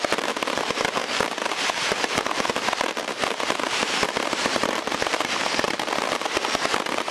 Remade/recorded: remade